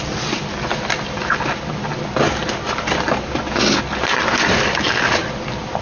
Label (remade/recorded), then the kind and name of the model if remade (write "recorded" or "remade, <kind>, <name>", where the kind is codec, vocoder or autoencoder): recorded